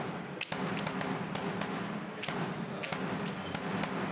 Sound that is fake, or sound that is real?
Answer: real